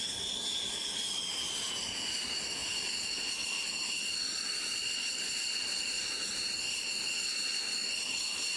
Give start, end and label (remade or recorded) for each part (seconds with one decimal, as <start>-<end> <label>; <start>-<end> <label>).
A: 0.0-8.6 recorded